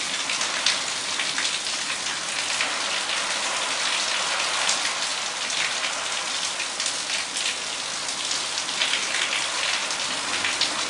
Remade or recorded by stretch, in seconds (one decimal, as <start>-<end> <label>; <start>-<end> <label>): 0.0-10.9 recorded